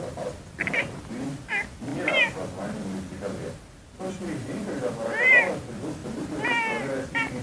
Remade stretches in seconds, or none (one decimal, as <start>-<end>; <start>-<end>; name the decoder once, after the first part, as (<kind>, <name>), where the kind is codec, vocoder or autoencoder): none